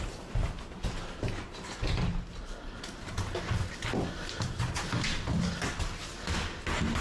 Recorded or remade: recorded